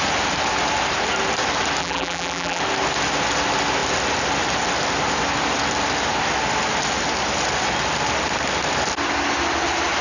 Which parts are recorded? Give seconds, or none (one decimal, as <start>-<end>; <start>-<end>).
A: 0.0-1.8; 2.6-10.0